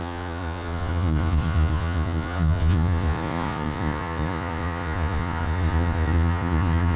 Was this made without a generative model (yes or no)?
no